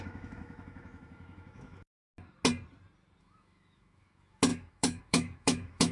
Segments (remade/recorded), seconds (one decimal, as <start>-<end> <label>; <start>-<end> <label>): 0.0-2.1 remade; 2.1-3.2 recorded; 3.2-5.9 remade

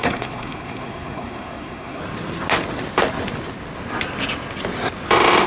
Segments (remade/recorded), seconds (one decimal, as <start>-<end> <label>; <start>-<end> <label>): 0.0-2.0 remade; 2.0-5.5 recorded

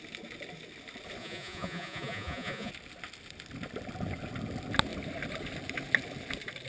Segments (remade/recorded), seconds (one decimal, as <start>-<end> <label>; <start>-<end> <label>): 0.0-1.2 recorded; 1.2-2.7 remade; 2.7-6.7 recorded

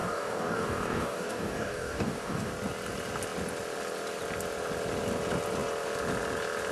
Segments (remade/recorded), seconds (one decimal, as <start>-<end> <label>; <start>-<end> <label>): 0.0-2.5 remade; 2.5-6.7 recorded

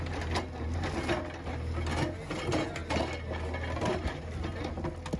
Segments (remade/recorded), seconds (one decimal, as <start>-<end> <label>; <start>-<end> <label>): 0.0-5.2 recorded